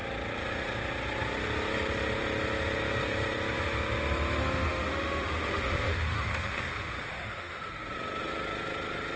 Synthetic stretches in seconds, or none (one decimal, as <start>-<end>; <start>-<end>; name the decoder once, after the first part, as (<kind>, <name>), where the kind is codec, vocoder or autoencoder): 4.4-7.7 (autoencoder, DAC-VAE)